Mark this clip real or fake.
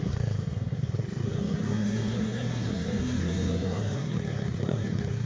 fake